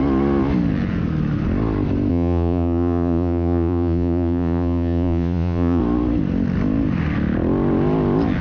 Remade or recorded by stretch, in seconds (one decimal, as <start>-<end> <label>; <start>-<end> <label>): 0.0-2.1 recorded; 2.1-5.8 remade; 5.8-8.4 recorded